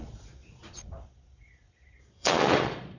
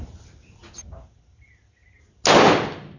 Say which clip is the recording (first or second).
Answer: second